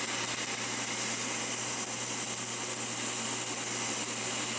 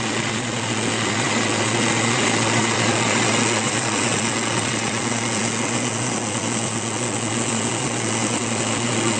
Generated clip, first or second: second